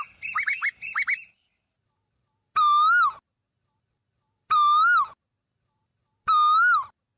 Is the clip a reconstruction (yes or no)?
no